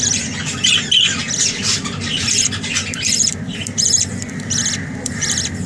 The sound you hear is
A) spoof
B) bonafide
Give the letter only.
A